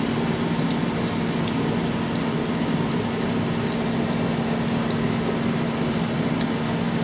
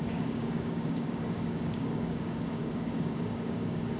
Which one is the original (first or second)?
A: first